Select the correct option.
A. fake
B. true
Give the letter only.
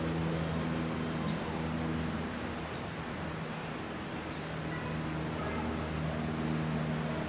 B